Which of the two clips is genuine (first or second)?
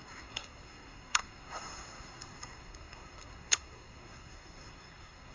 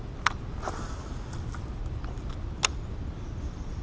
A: second